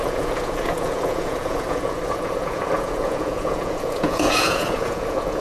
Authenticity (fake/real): fake